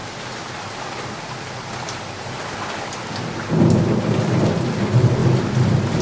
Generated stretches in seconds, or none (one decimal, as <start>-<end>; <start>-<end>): none